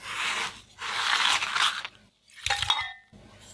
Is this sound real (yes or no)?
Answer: yes